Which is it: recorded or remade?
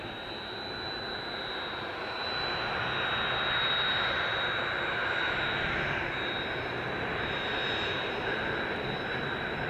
recorded